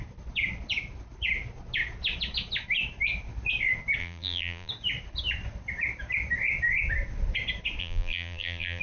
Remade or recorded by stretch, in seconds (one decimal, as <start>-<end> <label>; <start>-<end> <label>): 0.0-4.0 recorded; 4.0-4.7 remade; 4.7-7.8 recorded; 7.8-8.8 remade